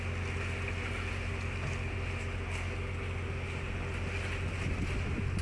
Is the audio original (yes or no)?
yes